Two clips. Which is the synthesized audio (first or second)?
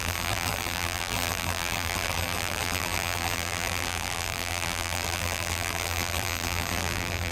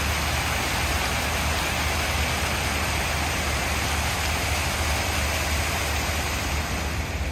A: first